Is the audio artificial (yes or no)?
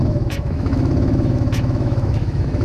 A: yes